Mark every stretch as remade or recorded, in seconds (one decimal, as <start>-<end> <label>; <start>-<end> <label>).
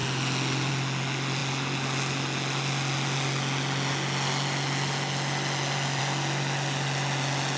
0.0-7.6 recorded